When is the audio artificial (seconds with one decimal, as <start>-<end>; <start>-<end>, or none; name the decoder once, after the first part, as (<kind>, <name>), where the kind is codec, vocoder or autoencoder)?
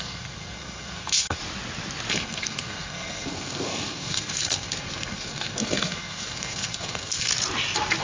0.0-1.4 (codec, SNAC); 2.1-7.3